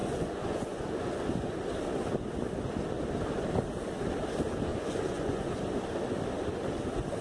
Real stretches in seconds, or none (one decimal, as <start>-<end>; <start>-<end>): 1.1-4.7; 5.6-7.2